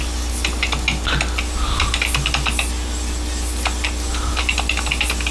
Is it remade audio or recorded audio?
recorded